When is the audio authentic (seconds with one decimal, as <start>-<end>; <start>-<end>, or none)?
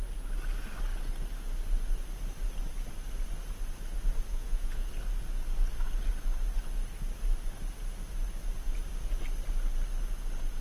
0.0-4.3; 4.9-10.6